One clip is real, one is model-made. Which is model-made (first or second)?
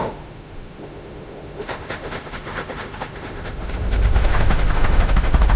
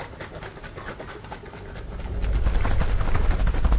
first